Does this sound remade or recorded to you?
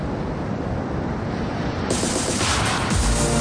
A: recorded